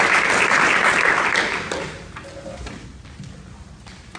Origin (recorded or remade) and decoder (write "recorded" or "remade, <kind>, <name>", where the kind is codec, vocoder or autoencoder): recorded